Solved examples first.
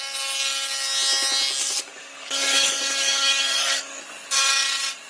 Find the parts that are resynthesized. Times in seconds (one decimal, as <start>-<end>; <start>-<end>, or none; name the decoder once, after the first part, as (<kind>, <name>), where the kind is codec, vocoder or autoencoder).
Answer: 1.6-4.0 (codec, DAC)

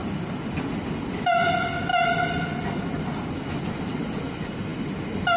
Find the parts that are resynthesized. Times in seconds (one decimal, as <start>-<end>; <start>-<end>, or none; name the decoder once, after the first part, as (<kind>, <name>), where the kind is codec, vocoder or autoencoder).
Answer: none

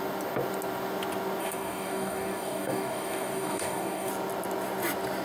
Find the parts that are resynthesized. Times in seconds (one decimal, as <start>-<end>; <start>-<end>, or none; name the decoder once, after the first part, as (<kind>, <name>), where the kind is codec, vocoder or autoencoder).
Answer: 1.4-4.1 (codec, DAC)

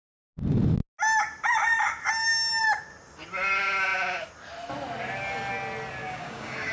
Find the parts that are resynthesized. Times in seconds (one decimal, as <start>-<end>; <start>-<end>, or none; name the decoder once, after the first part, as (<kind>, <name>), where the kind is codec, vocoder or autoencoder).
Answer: 6.0-6.7 (codec, DAC)

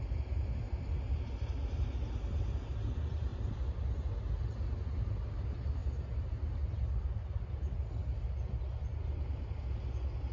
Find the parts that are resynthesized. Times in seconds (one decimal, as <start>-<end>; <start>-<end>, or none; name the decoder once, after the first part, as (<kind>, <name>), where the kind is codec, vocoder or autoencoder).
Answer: none

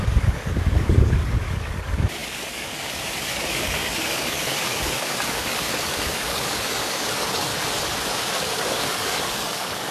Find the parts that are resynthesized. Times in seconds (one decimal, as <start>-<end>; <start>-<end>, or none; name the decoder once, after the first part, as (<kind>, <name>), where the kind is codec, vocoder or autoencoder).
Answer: 0.0-7.5 (codec, DAC); 8.1-9.9

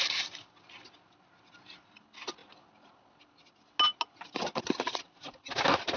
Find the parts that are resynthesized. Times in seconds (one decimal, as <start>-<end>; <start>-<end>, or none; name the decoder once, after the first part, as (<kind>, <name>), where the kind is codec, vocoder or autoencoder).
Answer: none

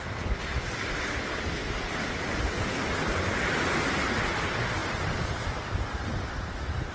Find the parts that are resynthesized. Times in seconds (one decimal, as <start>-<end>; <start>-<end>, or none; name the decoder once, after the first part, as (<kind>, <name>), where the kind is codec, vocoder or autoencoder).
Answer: none